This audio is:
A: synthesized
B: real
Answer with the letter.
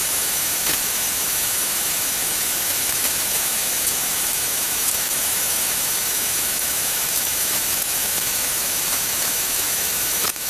A